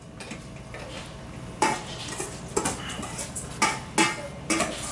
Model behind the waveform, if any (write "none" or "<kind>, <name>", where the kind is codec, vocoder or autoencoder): none